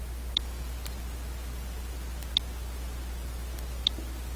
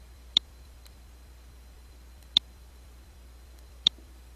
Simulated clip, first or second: second